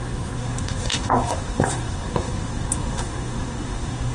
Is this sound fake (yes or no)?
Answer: yes